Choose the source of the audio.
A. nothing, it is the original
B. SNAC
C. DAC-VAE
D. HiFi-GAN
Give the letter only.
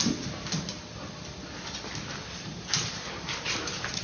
A